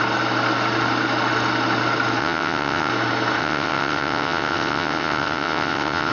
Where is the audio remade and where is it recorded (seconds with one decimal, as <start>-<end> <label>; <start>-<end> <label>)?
0.0-2.2 recorded; 2.2-2.9 remade; 2.9-3.4 recorded; 3.4-6.1 remade